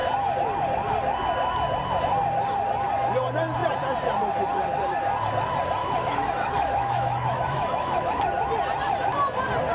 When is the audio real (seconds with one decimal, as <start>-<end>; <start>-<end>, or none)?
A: 0.0-5.8; 8.2-9.7